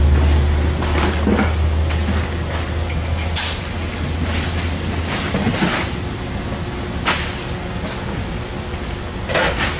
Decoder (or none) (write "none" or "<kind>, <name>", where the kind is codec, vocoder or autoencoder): none